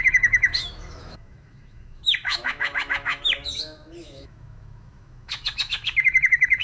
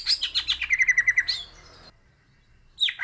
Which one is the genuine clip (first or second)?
second